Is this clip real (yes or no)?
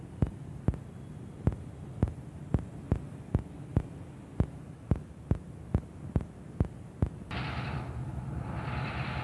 yes